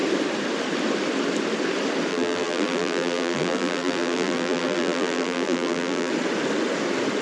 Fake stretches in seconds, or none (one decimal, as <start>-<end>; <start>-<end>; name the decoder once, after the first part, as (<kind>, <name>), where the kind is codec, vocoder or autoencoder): 2.1-6.1 (vocoder, BigVGAN v2)